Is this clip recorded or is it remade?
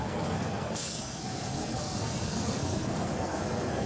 remade